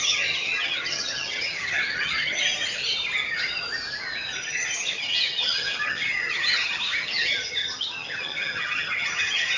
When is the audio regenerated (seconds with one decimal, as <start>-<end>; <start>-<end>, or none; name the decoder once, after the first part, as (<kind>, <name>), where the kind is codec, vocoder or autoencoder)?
0.0-2.4 (vocoder, HiFi-GAN); 4.4-9.6